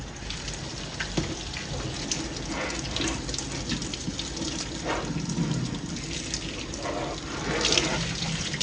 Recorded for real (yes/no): yes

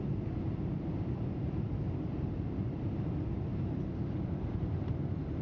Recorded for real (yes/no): yes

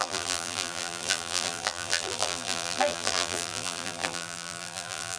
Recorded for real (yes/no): no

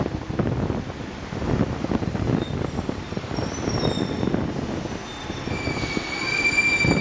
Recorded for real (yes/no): yes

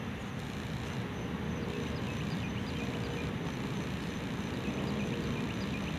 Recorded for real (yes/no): yes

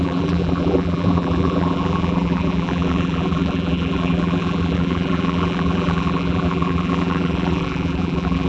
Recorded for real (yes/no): no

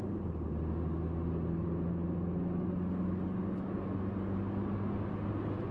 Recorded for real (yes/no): yes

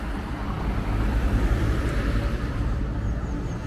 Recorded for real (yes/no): no